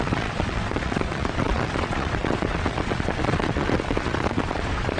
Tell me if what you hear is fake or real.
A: fake